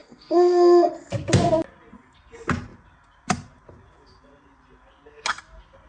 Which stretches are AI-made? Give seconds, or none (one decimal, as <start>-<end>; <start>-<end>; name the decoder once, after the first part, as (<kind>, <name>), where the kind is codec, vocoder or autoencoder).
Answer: 0.0-0.9 (codec, SNAC)